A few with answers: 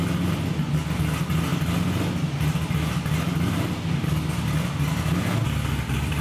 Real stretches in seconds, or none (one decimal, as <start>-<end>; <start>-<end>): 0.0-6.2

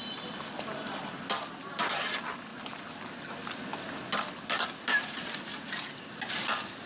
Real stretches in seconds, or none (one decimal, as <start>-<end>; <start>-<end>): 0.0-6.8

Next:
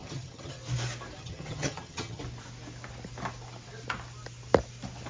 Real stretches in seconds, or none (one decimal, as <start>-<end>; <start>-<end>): 0.6-1.2; 2.2-5.1

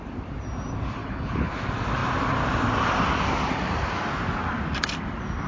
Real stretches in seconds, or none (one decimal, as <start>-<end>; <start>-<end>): 0.0-1.0; 1.5-5.5

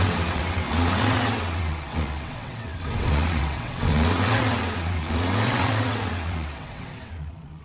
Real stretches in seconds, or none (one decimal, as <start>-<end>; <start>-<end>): none